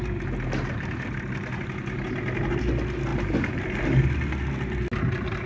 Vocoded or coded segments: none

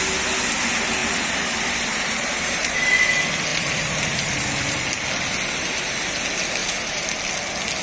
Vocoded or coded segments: 1.0-2.9; 3.5-4.8; 6.6-7.2